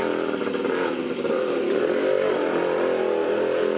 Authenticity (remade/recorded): recorded